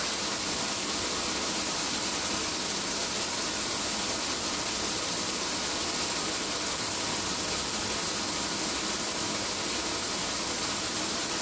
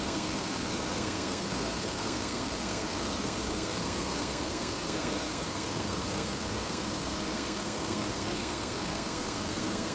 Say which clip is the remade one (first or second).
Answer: second